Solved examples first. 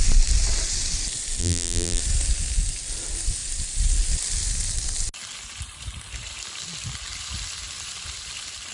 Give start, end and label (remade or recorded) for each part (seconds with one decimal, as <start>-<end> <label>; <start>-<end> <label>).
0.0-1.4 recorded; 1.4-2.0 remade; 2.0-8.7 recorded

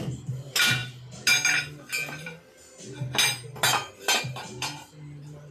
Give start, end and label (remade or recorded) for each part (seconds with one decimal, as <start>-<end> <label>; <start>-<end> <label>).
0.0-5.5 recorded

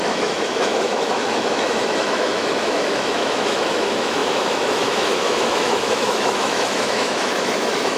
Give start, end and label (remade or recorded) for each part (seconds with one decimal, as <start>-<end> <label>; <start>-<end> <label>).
0.0-8.0 remade

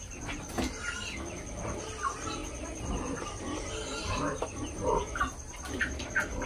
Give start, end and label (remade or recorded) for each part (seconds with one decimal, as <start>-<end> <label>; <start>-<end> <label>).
0.0-2.4 recorded; 2.4-6.5 remade